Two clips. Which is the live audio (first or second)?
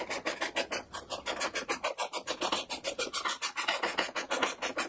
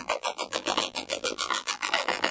first